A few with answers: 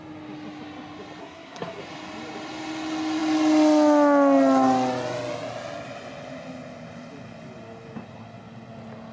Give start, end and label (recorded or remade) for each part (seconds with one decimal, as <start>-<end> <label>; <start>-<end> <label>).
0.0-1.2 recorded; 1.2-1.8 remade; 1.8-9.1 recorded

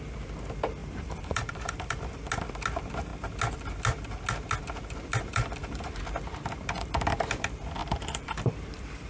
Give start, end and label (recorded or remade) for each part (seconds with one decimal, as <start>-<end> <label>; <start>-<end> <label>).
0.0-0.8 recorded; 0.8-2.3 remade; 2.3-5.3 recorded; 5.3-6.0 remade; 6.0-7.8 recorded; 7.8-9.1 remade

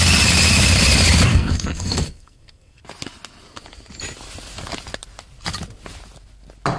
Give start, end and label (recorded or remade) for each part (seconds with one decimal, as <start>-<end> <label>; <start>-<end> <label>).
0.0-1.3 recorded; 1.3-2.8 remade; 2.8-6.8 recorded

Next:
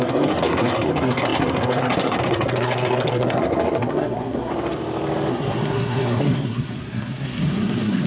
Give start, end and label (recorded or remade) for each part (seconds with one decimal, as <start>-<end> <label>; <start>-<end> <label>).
0.0-4.5 remade; 4.5-5.3 recorded; 5.3-8.1 remade

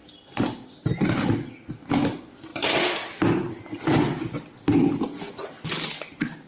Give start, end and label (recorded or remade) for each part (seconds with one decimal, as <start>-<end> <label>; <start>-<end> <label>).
0.0-1.7 recorded; 1.7-2.5 remade; 2.5-3.5 recorded; 3.5-4.1 remade; 4.1-4.9 recorded; 4.9-6.5 remade

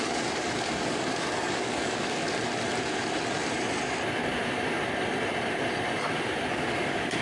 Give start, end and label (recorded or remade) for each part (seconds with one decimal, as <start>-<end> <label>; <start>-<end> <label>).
0.0-2.2 remade; 2.2-6.5 recorded; 6.5-7.2 remade